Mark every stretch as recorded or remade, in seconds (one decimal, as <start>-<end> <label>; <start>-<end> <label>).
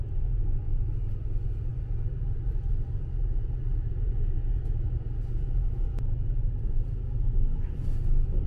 0.0-3.7 recorded; 3.7-6.0 remade; 6.0-8.5 recorded